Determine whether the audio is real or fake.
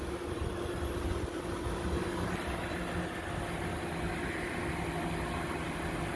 real